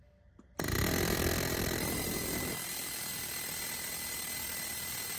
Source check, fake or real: real